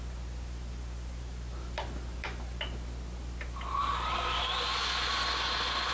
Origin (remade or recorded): recorded